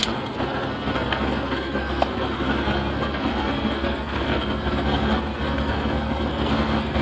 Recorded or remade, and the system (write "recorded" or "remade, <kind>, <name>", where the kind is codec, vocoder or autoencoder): remade, codec, SNAC